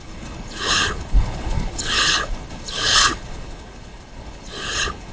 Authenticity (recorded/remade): remade